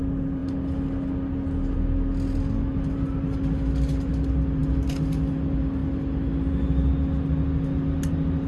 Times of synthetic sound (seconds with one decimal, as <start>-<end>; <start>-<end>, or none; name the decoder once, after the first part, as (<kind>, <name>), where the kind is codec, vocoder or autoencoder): none